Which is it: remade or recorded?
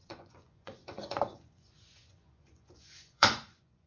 remade